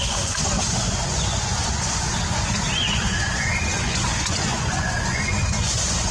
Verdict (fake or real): fake